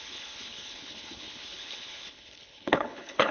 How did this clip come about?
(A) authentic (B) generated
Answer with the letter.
B